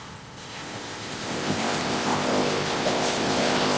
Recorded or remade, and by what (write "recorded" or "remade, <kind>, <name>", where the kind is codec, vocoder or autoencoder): remade, codec, ZipCodec